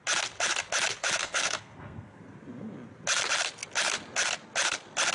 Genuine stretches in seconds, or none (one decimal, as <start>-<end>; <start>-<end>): 0.0-1.2; 2.2-5.1

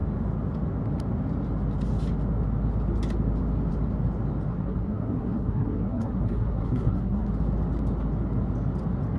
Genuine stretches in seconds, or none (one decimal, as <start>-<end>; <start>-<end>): 0.0-4.5; 7.3-9.2

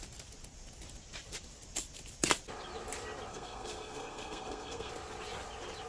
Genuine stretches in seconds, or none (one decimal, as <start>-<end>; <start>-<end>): 0.0-3.3; 4.9-5.9

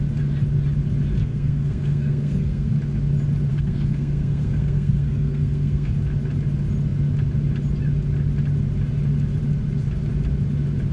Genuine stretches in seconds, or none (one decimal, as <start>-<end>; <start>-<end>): 0.0-1.2; 2.7-3.5; 5.9-10.9

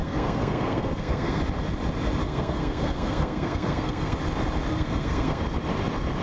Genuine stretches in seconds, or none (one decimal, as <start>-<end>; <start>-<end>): 1.4-2.2; 4.2-4.7; 5.4-6.2

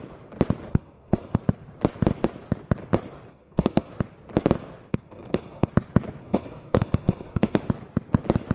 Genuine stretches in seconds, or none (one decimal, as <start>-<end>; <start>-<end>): 0.0-0.7; 1.4-3.3; 3.9-4.9; 5.7-6.2; 7.6-8.5

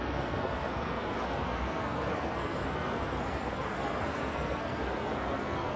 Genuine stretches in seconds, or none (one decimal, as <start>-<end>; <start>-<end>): none

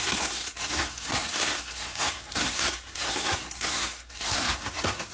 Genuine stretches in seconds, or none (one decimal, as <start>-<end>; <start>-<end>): none